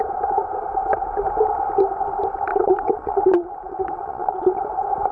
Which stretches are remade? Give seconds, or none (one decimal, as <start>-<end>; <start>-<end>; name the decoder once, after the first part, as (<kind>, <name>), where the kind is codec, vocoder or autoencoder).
2.5-4.6 (vocoder, Vocos)